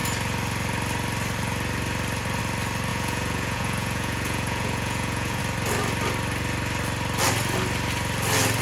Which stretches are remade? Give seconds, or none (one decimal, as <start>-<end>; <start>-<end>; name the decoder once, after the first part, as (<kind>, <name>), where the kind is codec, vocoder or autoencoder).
2.9-5.4 (vocoder, Vocos)